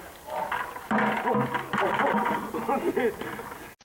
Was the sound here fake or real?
real